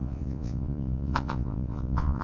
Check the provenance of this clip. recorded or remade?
remade